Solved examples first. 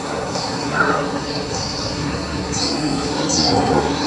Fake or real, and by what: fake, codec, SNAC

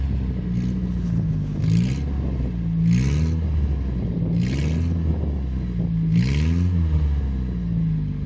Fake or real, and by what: real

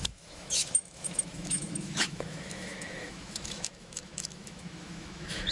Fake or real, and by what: fake, autoencoder, DAC-VAE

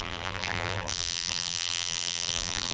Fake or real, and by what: fake, vocoder, BigVGAN v2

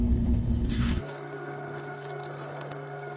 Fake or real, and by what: fake, codec, SNAC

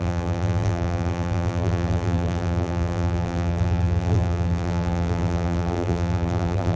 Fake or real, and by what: fake, vocoder, BigVGAN v2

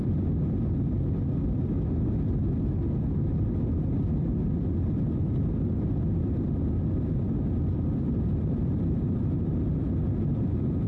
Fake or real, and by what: real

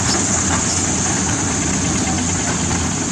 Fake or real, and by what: real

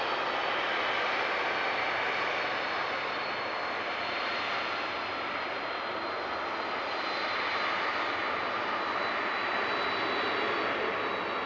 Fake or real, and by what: real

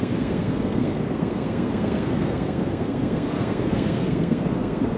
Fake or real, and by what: fake, codec, SNAC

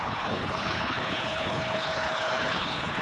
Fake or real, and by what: fake, codec, HILCodec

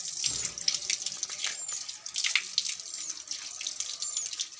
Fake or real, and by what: real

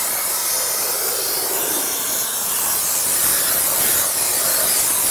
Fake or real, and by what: fake, vocoder, BigVGAN v2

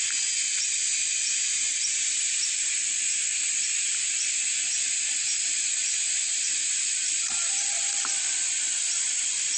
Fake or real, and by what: real